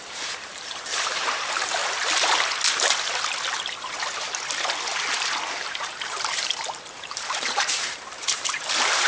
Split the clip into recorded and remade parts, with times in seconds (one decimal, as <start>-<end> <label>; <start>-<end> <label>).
0.0-1.8 remade; 1.8-5.6 recorded; 5.6-9.1 remade